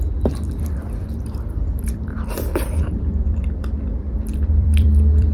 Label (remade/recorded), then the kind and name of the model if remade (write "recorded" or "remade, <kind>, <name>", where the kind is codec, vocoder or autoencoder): remade, vocoder, BigVGAN v2